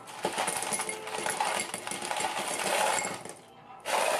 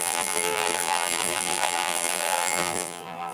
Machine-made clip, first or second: second